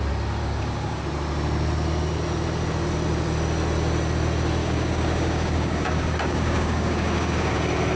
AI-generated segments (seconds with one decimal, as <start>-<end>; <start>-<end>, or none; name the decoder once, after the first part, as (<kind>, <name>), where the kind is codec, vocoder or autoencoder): 0.4-1.0 (codec, DAC); 4.6-7.6